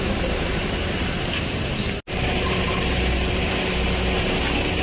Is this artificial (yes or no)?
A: no